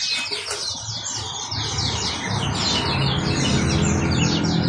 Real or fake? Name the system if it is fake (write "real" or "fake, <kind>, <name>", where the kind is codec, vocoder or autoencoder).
real